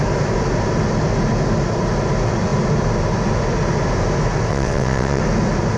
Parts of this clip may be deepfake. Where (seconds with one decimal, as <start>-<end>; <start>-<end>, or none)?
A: 4.5-5.2